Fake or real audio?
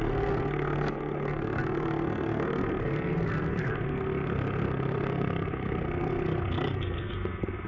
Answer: fake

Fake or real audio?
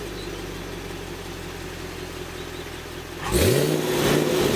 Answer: real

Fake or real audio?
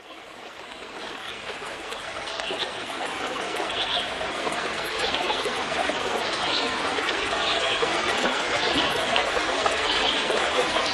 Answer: fake